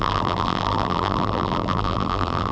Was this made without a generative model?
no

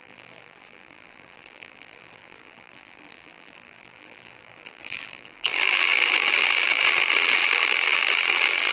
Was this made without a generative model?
no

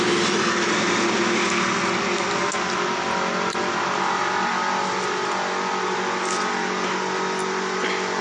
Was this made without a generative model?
yes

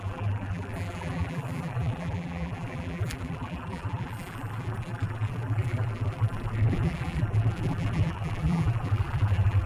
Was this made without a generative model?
no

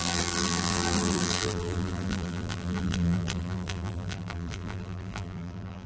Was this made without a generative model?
no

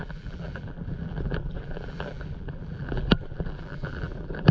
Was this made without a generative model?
no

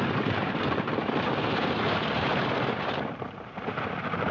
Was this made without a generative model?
no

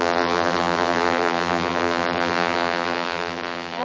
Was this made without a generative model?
no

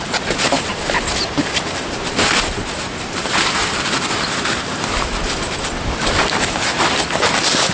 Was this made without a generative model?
no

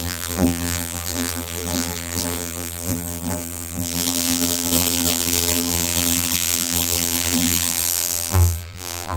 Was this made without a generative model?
no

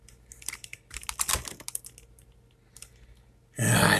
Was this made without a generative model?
yes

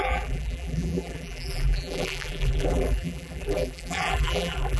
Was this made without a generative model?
no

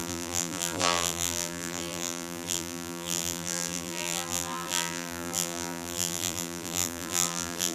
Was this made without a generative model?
no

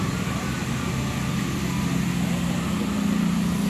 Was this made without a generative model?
yes